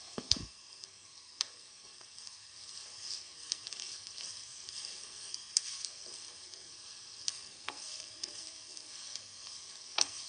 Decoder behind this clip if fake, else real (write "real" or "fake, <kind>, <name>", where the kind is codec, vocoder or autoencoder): fake, codec, SNAC